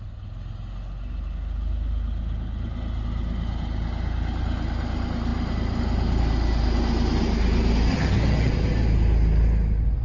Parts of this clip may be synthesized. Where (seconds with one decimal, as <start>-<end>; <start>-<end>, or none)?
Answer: 7.9-8.5